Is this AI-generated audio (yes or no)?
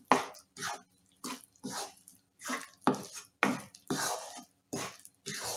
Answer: no